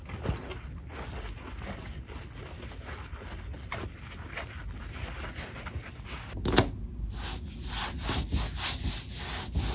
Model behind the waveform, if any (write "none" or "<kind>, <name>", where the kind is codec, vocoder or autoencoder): none